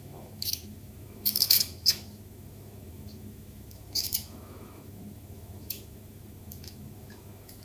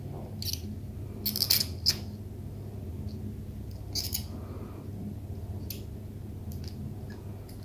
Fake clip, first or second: first